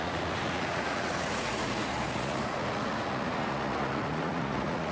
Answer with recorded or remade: remade